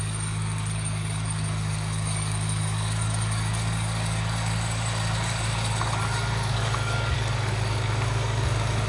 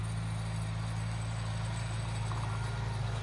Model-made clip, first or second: first